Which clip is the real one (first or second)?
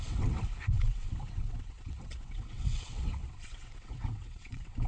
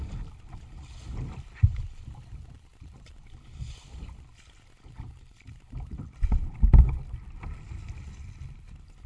second